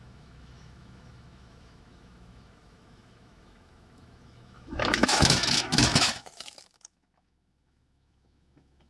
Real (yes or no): no